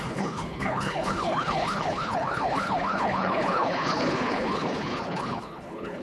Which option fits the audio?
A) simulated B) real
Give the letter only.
A